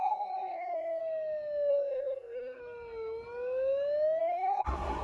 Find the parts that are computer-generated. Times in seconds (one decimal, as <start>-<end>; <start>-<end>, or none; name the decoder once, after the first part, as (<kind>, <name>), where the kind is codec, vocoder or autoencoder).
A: 0.0-1.0 (codec, SNAC); 1.7-2.6; 4.2-5.0